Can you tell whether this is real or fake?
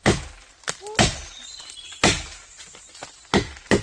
real